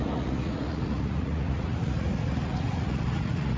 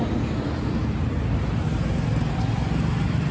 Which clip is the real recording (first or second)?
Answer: second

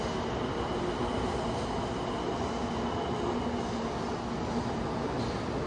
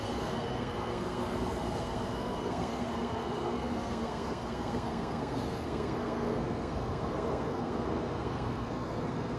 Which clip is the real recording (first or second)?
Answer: first